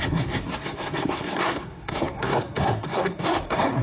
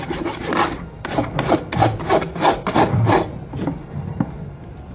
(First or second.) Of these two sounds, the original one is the second